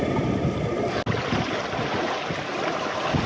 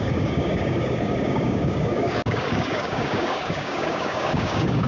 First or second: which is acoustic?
first